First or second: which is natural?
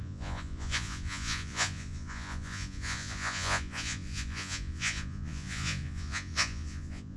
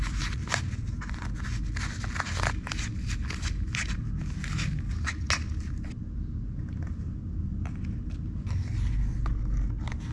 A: second